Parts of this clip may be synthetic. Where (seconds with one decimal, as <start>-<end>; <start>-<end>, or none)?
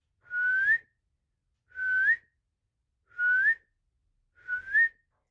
none